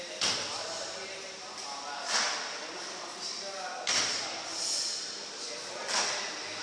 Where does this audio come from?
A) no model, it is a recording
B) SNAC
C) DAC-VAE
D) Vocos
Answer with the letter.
A